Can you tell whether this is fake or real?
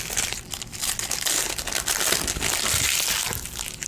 real